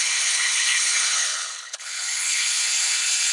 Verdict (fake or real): fake